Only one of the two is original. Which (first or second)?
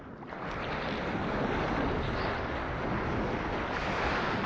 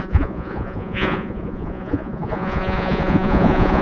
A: first